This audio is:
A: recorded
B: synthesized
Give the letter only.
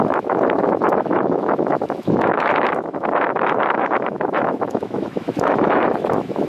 B